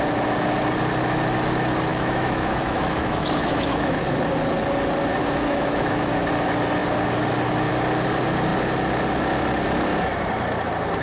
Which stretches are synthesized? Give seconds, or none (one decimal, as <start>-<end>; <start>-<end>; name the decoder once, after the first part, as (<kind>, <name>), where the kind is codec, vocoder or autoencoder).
1.9-4.0 (autoencoder, DAC-VAE); 5.1-6.3